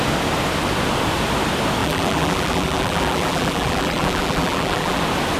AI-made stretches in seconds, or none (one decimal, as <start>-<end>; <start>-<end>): 1.8-5.0